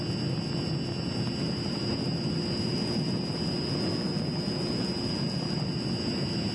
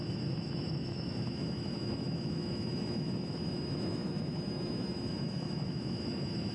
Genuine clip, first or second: first